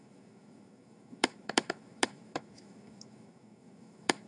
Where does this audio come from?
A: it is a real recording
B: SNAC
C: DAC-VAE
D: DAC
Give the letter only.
C